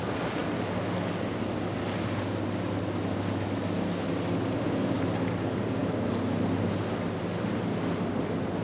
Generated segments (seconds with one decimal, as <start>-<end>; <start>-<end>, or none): none